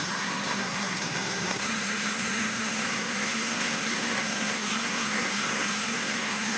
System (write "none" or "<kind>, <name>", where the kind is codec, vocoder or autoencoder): codec, SNAC